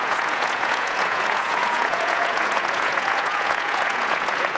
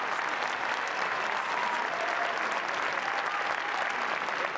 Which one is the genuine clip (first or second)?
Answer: second